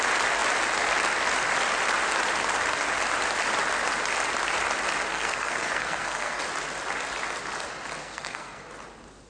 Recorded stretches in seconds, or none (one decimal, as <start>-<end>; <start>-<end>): 0.0-5.1; 6.4-8.0; 8.7-9.3